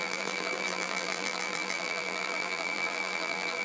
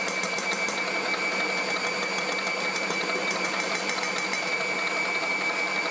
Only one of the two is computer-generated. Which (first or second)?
first